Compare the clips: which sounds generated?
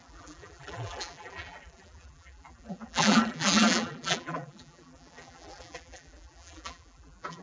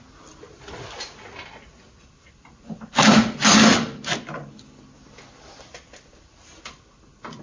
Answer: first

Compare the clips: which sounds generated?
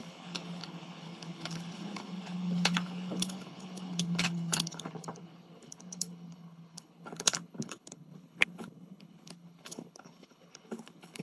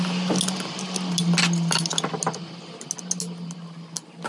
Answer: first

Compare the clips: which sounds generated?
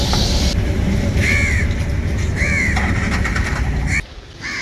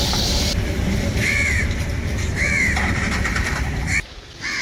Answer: second